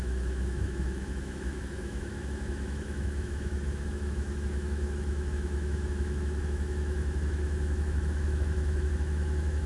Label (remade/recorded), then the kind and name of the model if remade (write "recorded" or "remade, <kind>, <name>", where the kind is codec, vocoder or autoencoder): remade, autoencoder, DAC-VAE